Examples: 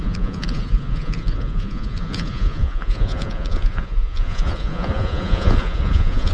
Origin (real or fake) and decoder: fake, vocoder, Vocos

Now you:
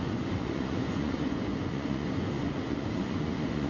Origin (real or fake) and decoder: fake, vocoder, Vocos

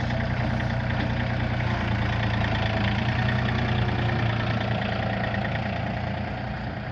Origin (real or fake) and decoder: real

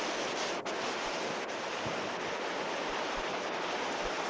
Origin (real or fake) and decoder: real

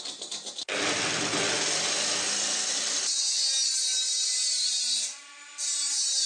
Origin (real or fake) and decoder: real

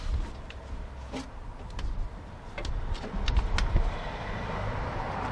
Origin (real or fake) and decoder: real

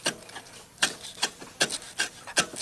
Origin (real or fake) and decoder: real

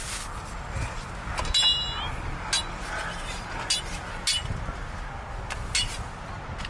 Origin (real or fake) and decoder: real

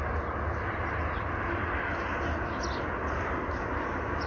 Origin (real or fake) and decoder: real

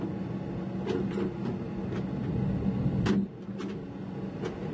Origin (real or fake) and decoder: real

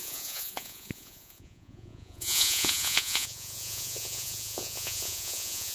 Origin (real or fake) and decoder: fake, vocoder, Vocos